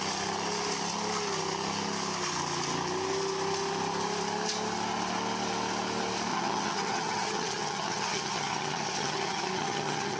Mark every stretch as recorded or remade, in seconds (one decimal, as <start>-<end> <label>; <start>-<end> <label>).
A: 0.0-6.3 recorded; 6.3-10.2 remade